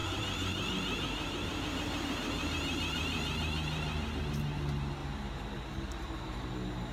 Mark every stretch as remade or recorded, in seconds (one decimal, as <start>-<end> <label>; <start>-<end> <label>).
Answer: 0.0-4.1 remade; 4.1-5.0 recorded; 5.0-6.5 remade; 6.5-6.9 recorded